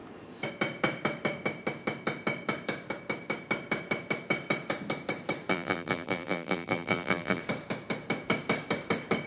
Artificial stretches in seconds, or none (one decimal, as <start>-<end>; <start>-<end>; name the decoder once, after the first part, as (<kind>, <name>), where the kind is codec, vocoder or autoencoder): 5.5-7.4 (vocoder, BigVGAN v2)